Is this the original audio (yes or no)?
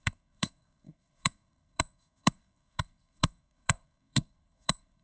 no